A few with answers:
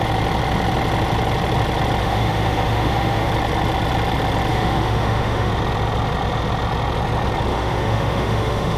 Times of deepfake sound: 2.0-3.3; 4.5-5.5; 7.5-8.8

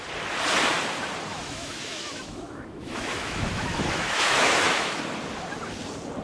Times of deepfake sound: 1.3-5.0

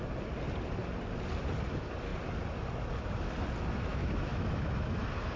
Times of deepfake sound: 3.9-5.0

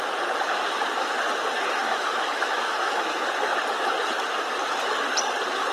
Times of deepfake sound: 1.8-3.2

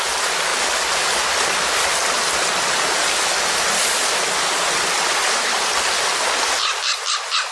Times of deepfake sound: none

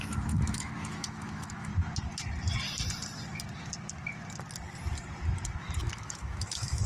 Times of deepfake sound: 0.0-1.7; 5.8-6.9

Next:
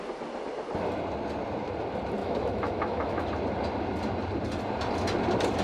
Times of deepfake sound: 2.2-3.3

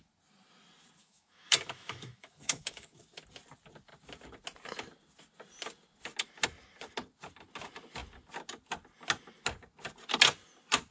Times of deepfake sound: 1.0-3.0